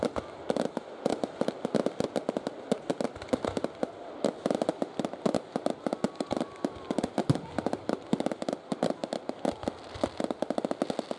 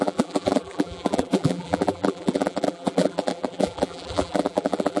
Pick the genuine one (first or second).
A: first